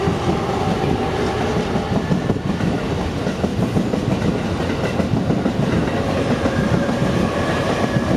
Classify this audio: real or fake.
real